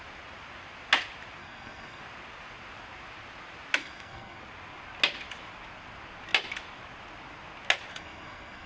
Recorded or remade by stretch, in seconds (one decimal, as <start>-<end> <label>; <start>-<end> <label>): 0.0-1.4 recorded; 1.4-2.0 remade; 2.0-3.8 recorded; 3.8-4.4 remade; 4.4-7.9 recorded; 7.9-8.7 remade